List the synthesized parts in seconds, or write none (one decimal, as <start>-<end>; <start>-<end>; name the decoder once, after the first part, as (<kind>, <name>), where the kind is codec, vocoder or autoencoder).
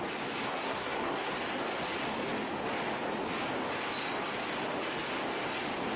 0.5-1.3 (codec, SNAC)